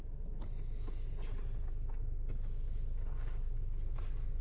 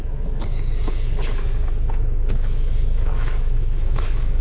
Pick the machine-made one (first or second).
second